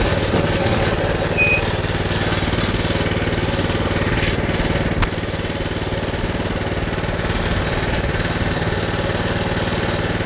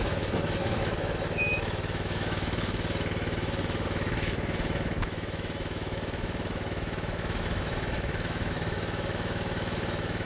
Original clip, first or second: first